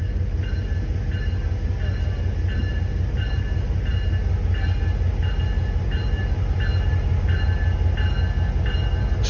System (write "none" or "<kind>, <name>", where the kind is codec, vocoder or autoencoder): none